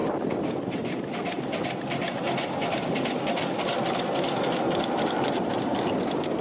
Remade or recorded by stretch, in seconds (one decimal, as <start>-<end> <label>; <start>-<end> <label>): 0.0-6.4 recorded